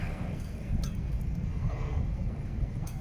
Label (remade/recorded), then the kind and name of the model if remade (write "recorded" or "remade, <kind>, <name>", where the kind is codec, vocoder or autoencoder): remade, codec, SNAC